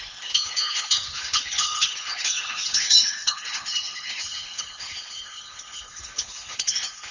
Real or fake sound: fake